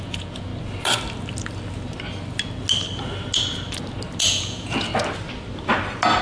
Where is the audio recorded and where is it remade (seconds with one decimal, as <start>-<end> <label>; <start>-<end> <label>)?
0.0-0.5 remade; 0.5-4.2 recorded; 4.2-4.9 remade; 4.9-6.2 recorded